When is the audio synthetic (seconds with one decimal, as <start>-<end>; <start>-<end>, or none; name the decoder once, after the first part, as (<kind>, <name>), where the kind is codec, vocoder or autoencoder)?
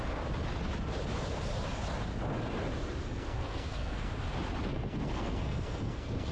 3.0-4.1 (codec, SNAC); 4.7-6.3